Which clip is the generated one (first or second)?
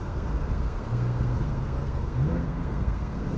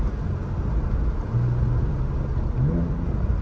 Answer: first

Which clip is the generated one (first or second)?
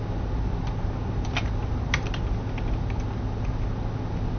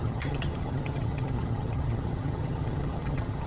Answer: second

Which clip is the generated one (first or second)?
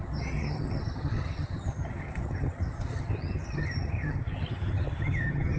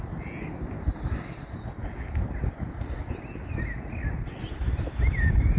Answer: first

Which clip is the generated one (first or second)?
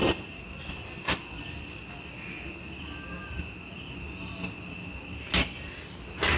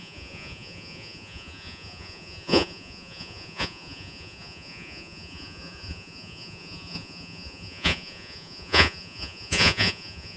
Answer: second